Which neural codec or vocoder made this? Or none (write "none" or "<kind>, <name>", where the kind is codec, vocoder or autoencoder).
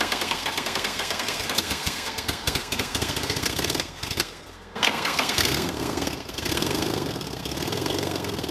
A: codec, SNAC